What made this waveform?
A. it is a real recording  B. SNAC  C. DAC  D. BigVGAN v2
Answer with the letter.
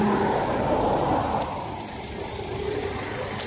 D